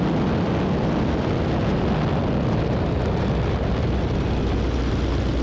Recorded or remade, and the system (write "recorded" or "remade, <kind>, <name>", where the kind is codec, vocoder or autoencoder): recorded